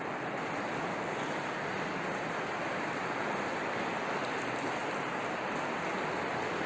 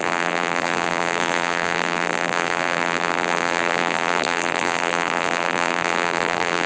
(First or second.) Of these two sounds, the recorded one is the first